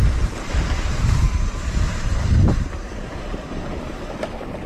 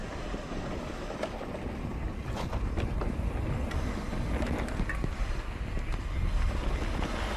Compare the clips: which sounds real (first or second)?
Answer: second